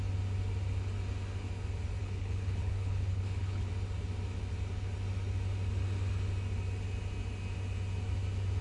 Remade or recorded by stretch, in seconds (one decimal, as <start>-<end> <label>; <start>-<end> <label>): 0.0-2.0 recorded; 2.0-3.7 remade; 3.7-8.6 recorded